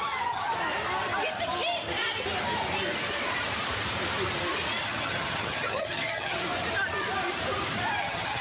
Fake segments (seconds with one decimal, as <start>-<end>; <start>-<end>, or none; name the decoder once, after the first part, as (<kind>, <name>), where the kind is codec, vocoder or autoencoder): 0.0-0.5 (vocoder, HiFi-GAN); 4.8-6.4; 8.0-8.4